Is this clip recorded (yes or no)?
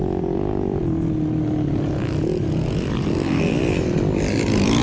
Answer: yes